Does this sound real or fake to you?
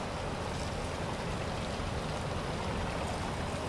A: real